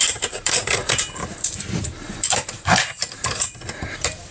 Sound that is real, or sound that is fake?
fake